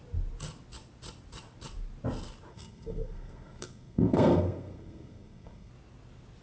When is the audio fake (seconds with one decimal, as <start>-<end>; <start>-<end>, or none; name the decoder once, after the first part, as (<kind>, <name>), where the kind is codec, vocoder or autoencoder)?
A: 2.5-5.7 (codec, SNAC)